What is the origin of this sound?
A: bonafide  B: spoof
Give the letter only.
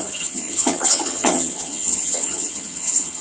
B